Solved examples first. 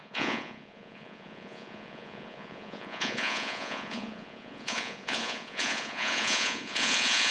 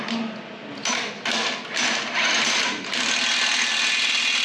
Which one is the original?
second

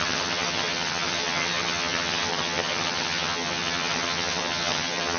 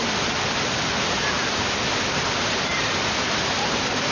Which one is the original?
second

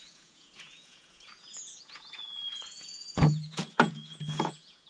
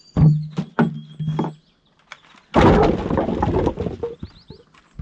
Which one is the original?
second